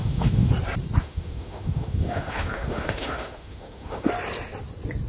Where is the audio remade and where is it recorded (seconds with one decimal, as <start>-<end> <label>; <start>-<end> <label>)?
0.0-0.5 remade; 0.5-1.0 recorded; 1.0-4.1 remade; 4.1-5.1 recorded

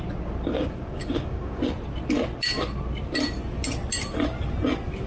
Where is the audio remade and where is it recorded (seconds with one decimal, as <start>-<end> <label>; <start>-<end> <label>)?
0.0-0.5 recorded; 0.5-1.6 remade; 1.6-5.1 recorded

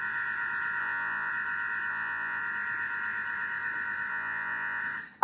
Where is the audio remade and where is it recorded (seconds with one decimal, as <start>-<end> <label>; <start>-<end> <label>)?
0.0-0.8 recorded; 0.8-1.3 remade; 1.3-1.9 recorded; 1.9-2.4 remade; 2.4-4.1 recorded; 4.1-4.8 remade; 4.8-5.2 recorded